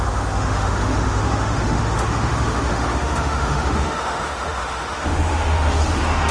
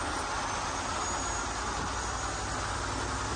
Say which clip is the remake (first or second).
first